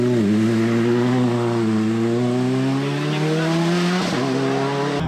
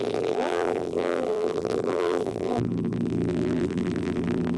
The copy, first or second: second